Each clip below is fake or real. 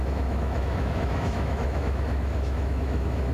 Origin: fake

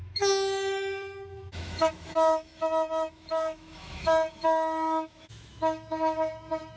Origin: fake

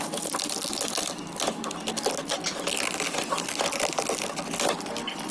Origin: real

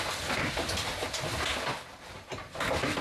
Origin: real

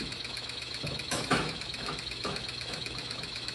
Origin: fake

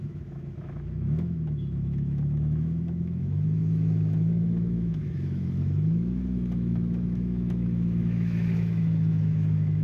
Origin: fake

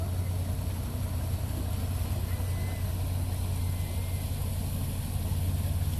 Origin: real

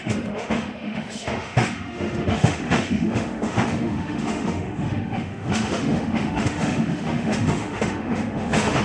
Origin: fake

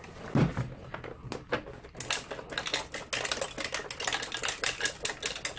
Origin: real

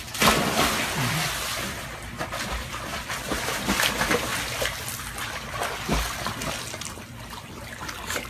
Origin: real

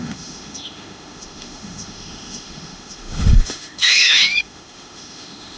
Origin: fake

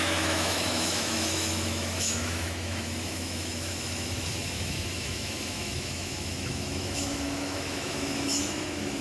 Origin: fake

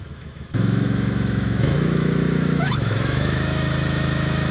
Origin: fake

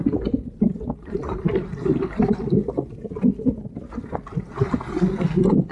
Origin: real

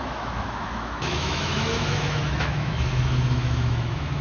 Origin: fake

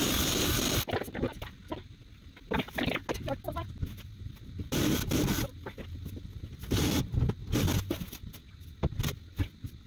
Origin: real